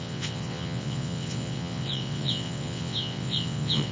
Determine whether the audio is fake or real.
fake